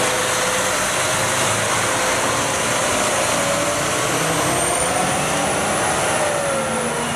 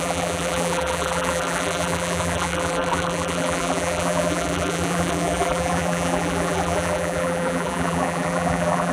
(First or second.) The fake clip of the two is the second